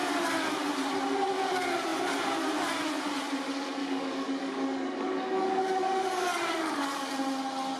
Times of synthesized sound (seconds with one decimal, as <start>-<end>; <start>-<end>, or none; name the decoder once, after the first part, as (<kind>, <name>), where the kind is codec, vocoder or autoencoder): 3.8-7.1 (codec, DAC)